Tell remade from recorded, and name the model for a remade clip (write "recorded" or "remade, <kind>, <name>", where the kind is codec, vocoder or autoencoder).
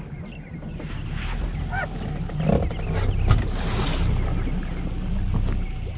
recorded